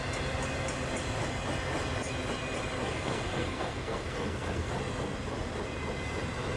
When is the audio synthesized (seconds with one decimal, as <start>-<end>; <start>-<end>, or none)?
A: 2.8-4.7